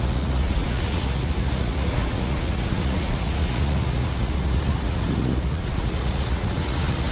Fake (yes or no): yes